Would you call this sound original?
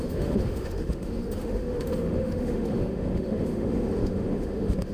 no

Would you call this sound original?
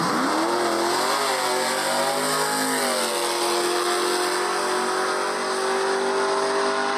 yes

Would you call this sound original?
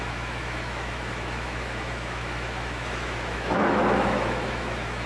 no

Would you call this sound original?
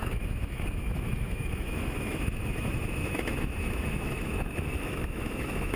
no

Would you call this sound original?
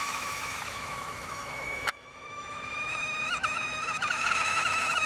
no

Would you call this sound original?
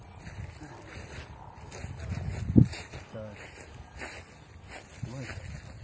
yes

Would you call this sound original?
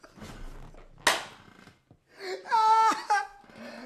yes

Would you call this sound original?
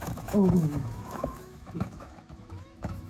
no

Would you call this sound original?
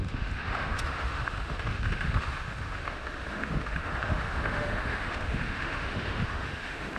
no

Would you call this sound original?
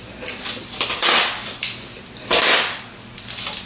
yes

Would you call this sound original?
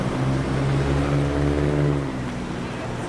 yes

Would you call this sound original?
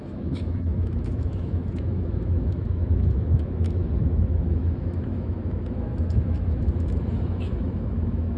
no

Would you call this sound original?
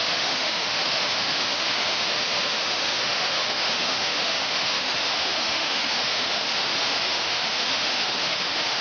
no